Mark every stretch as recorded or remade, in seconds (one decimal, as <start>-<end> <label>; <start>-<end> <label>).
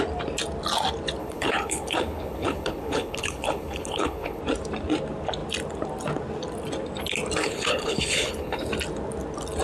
0.0-1.2 recorded; 1.2-4.4 remade; 4.4-7.4 recorded; 7.4-8.7 remade; 8.7-9.6 recorded